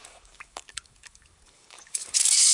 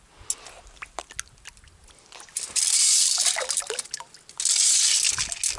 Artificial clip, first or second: first